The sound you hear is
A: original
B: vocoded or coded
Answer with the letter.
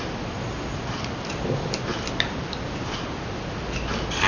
A